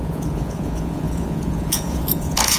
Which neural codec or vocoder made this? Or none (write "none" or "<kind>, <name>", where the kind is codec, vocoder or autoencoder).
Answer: vocoder, Vocos